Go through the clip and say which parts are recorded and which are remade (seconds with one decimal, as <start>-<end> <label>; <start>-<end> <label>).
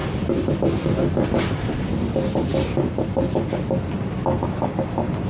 0.0-0.5 remade; 0.5-5.3 recorded